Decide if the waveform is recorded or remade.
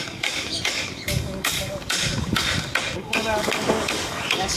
remade